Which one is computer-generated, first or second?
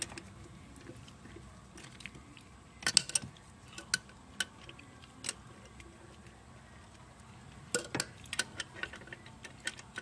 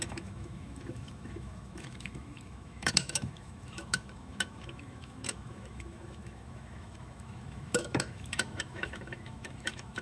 second